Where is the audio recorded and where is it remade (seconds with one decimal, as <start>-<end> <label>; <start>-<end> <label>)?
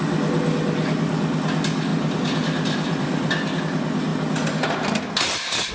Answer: 0.0-1.9 recorded; 1.9-3.6 remade; 3.6-5.7 recorded